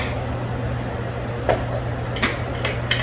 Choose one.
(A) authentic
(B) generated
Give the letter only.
A